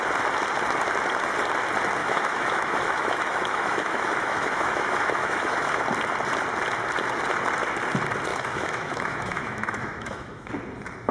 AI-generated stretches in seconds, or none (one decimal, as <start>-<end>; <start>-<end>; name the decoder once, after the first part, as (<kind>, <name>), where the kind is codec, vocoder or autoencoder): 2.0-5.8 (autoencoder, DAC-VAE); 8.3-10.5